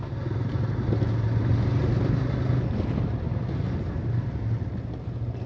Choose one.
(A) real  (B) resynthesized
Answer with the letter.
A